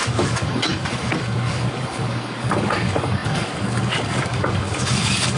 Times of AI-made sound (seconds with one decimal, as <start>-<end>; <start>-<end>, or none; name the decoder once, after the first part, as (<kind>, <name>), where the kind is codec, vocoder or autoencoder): 0.0-5.4 (codec, DAC)